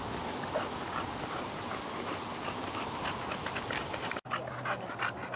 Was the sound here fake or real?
real